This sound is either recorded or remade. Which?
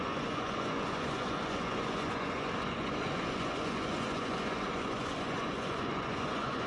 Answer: remade